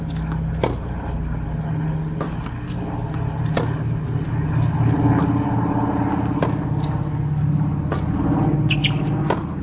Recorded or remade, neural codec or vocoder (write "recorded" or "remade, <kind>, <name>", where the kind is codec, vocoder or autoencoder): recorded